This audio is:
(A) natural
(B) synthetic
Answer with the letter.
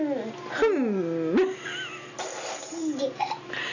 A